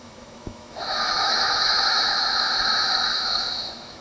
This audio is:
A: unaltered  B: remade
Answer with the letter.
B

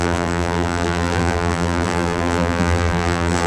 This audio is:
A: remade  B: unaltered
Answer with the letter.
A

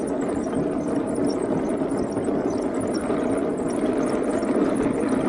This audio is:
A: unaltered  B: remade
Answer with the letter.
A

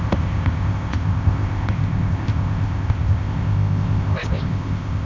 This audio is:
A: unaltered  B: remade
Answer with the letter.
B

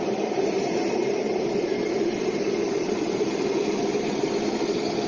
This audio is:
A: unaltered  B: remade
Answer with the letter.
B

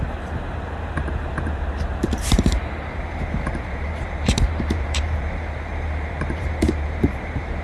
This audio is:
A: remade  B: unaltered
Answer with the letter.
A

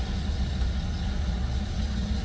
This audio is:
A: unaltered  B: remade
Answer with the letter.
A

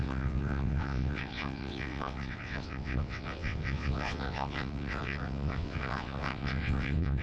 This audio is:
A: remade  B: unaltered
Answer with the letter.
A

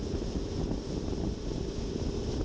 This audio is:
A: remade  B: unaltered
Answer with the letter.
B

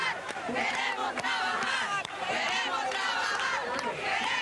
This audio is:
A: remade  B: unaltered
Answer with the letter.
A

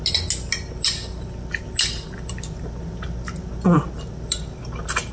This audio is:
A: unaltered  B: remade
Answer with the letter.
A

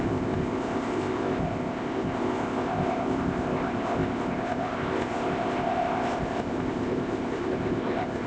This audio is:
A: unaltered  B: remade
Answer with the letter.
B